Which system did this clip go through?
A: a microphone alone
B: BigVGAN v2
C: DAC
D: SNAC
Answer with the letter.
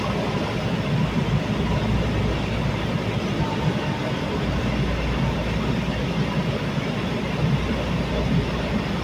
A